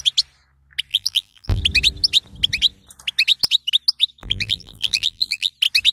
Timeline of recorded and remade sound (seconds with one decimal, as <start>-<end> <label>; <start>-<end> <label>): 0.0-0.9 recorded; 0.9-1.6 remade; 1.6-4.2 recorded; 4.2-5.5 remade; 5.5-5.9 recorded